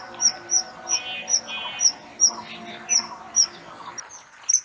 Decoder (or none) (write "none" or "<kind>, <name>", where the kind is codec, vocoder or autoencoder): none